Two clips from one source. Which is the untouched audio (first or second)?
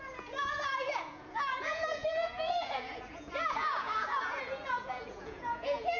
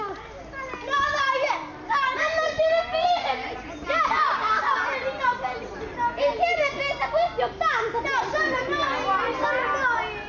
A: second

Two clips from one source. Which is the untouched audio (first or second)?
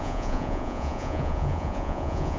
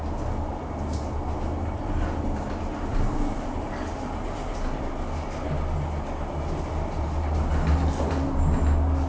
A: second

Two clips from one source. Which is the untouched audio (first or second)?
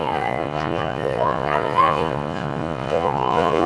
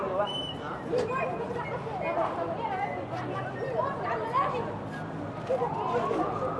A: second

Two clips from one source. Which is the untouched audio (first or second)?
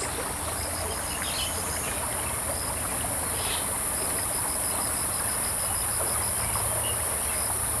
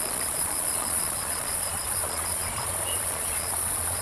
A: first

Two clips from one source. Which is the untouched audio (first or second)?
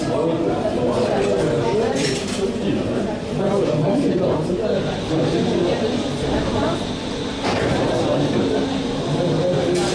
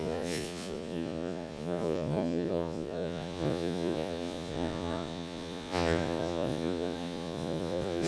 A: first